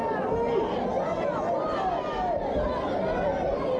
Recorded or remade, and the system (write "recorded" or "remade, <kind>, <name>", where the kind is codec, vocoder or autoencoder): recorded